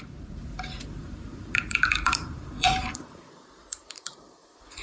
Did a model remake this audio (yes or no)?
yes